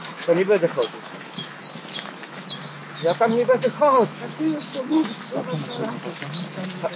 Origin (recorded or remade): remade